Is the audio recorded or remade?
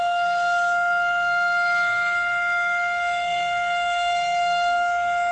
remade